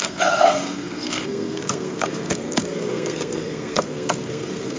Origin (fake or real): fake